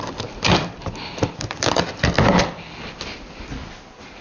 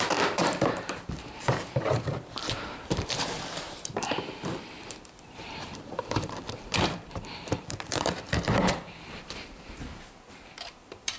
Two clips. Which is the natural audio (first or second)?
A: first